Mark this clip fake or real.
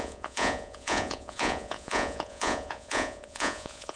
fake